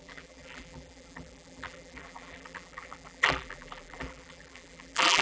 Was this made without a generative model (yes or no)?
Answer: no